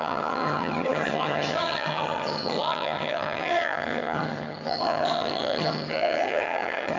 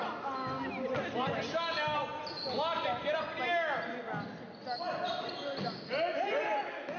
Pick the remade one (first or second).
first